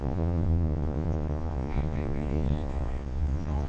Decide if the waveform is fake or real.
fake